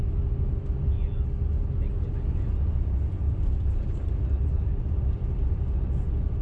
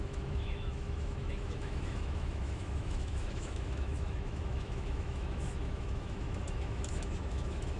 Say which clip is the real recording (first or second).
first